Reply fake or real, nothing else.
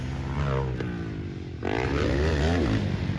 real